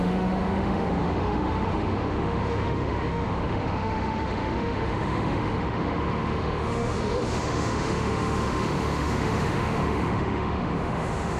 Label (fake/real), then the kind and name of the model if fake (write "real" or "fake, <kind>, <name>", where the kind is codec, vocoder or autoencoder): fake, autoencoder, DAC-VAE